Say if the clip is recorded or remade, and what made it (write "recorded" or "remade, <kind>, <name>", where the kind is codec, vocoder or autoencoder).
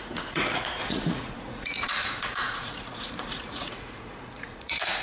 remade, vocoder, Vocos